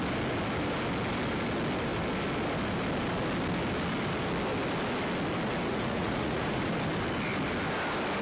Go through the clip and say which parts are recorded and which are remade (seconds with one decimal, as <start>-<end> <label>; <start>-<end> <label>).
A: 0.0-5.7 recorded; 5.7-6.7 remade; 6.7-8.2 recorded